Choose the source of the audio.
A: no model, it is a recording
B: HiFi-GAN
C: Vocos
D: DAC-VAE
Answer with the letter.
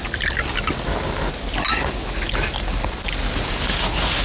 A